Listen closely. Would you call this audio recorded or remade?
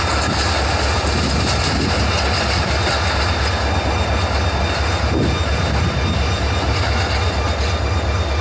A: recorded